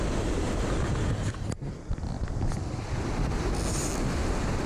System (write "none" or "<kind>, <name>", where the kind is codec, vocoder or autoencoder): none